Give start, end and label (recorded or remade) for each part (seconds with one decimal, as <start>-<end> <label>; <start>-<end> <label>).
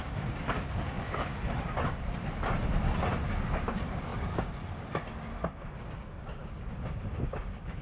0.0-1.3 remade; 1.3-3.4 recorded; 3.4-7.8 remade